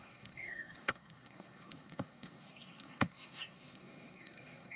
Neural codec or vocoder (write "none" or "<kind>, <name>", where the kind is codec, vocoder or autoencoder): codec, SNAC